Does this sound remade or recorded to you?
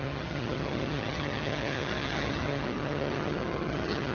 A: remade